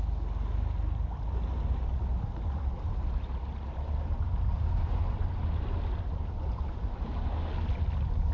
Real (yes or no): yes